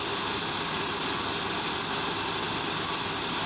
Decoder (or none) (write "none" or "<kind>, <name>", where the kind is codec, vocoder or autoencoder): none